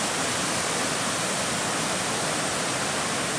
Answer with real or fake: real